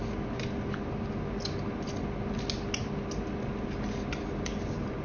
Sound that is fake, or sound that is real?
real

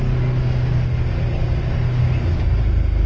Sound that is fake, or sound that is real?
real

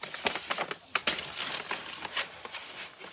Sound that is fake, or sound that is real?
real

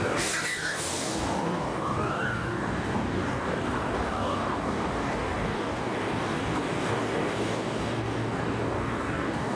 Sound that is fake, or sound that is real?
fake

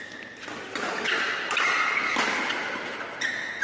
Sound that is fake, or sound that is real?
real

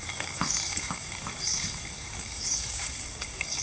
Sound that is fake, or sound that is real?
fake